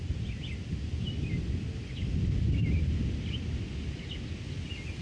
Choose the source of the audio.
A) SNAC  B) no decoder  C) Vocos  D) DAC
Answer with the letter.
B